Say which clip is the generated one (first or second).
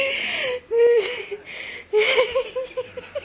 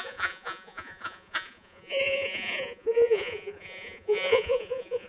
second